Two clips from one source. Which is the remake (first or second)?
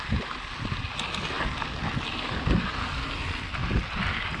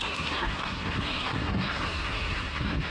second